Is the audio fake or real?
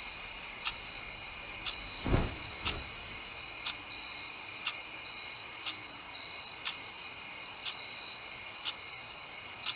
real